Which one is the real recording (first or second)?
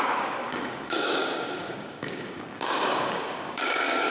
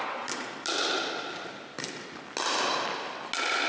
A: second